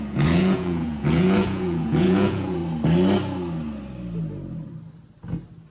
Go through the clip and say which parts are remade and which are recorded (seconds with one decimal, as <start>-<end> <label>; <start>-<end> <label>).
0.0-2.6 remade; 2.6-5.7 recorded